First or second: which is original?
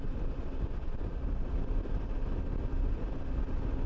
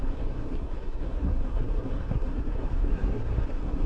first